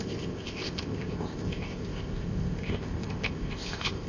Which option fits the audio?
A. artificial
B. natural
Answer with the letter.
A